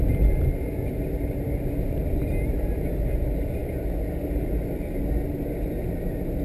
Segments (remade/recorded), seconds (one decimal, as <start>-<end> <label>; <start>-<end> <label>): 0.0-6.4 recorded